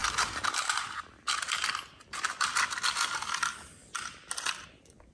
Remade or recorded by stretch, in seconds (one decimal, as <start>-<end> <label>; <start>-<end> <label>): 0.0-5.1 recorded